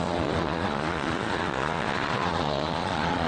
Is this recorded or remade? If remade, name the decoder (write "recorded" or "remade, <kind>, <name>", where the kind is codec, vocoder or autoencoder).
remade, vocoder, Vocos